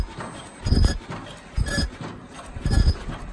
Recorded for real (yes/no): yes